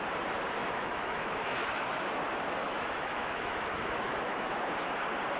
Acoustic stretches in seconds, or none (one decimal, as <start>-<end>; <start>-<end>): 0.0-0.6; 2.1-2.6; 4.7-5.4